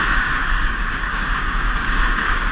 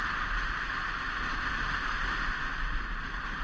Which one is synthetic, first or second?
first